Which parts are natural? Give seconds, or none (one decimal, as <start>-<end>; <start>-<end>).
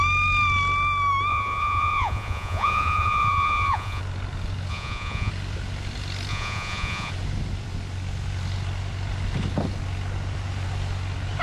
0.0-1.3; 4.0-4.7; 5.3-6.3; 7.1-11.4